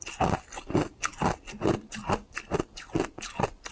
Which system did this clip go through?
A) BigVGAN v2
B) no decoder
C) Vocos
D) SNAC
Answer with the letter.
B